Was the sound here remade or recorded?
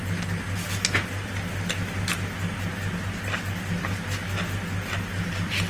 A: recorded